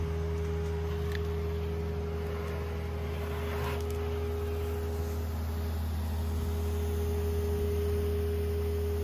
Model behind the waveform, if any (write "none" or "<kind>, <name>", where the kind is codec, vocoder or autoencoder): none